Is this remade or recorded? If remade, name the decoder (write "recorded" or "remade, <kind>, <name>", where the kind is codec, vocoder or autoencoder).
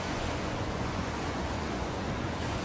remade, vocoder, Vocos